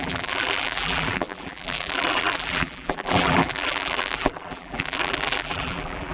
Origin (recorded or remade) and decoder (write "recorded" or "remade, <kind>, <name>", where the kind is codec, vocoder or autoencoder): remade, vocoder, BigVGAN v2